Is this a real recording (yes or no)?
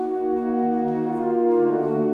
yes